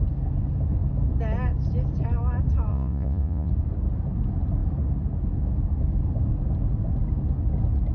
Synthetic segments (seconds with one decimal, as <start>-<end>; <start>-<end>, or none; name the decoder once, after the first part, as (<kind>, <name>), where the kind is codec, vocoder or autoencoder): 2.7-3.5 (vocoder, Vocos)